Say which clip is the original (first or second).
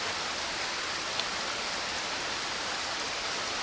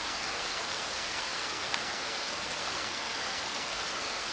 first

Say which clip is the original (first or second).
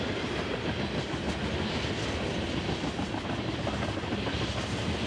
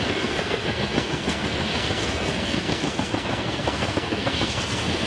first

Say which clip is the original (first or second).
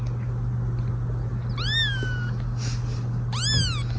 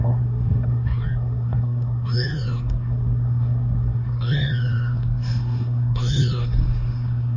first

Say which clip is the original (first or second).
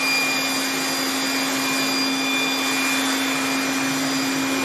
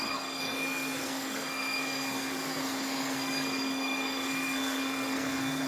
first